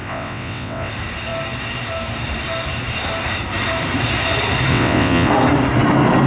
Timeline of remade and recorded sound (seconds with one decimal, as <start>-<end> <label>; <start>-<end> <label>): 0.0-0.9 remade; 0.9-4.7 recorded; 4.7-5.3 remade; 5.3-6.3 recorded